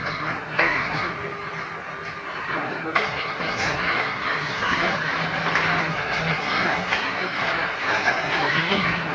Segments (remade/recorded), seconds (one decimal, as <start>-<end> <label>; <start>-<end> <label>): 0.0-1.1 remade; 1.1-2.4 recorded; 2.4-5.1 remade; 5.1-5.8 recorded; 5.8-9.1 remade